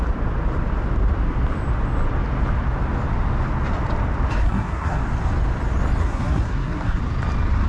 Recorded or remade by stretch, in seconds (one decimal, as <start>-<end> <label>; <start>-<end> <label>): 0.0-4.4 recorded; 4.4-5.0 remade; 5.0-6.0 recorded; 6.0-7.0 remade; 7.0-7.7 recorded